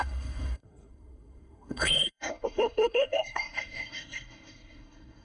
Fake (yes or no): yes